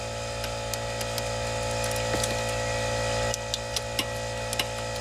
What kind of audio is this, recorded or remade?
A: recorded